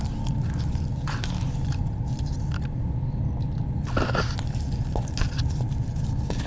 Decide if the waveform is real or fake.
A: real